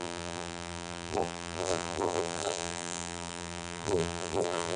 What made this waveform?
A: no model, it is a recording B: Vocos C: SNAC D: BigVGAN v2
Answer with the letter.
D